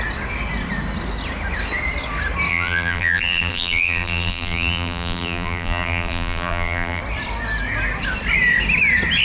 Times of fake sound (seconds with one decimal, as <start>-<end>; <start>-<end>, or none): 2.5-7.0